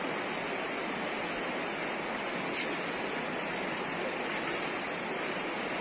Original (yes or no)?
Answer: yes